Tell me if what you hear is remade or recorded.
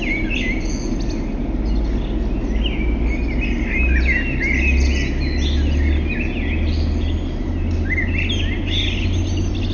recorded